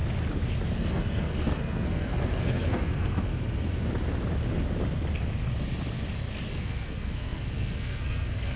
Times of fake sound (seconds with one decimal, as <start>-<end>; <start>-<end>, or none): 0.8-3.3; 6.5-8.6